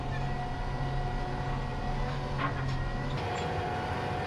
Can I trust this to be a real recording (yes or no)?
yes